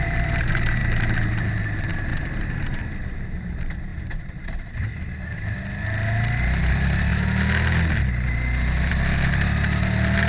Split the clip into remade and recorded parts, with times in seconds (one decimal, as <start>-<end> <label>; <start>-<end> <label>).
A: 0.0-2.1 recorded; 2.1-2.8 remade; 2.8-3.9 recorded; 3.9-5.0 remade; 5.0-10.3 recorded